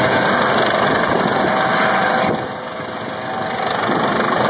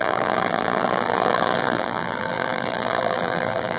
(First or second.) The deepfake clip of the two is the second